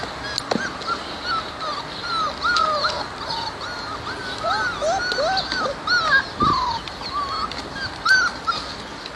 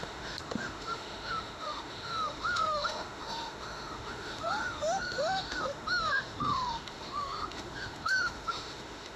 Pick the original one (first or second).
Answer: first